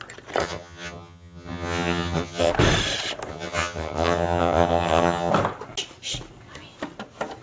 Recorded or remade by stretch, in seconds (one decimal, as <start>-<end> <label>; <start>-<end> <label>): 0.0-0.4 recorded; 0.4-2.5 remade; 2.5-3.3 recorded; 3.3-5.3 remade; 5.3-7.4 recorded